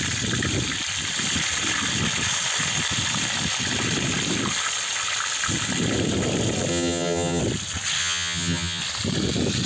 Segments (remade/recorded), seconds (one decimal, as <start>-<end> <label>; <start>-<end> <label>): 0.0-6.7 recorded; 6.7-7.4 remade; 7.4-8.0 recorded; 8.0-8.8 remade; 8.8-9.7 recorded